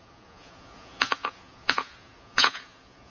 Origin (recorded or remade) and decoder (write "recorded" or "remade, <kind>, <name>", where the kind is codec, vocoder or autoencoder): remade, vocoder, Vocos